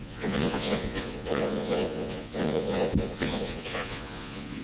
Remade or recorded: remade